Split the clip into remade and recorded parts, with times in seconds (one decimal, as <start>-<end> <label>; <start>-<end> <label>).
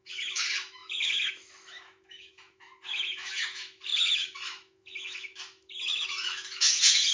0.0-7.1 remade